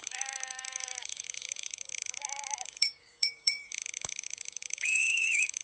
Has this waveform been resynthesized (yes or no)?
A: yes